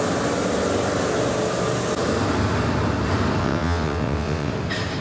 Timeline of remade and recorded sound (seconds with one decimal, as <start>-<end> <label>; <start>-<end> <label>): 0.0-3.4 recorded; 3.4-4.5 remade; 4.5-5.0 recorded